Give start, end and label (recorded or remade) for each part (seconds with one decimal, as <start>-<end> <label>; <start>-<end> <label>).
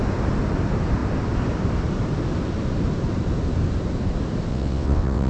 0.0-4.5 recorded; 4.5-5.3 remade